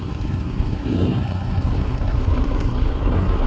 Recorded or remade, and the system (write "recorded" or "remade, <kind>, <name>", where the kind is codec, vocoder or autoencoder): remade, codec, SNAC